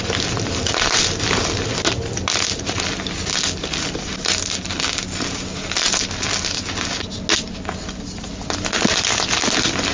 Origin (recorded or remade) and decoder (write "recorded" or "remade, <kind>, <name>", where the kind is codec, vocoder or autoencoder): recorded